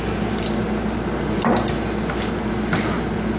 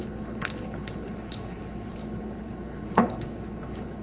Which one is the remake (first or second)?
second